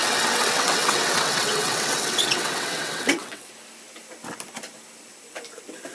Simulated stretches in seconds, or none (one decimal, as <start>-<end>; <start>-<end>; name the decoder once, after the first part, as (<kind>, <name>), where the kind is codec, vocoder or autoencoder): 0.0-3.5 (vocoder, WaveNeXt)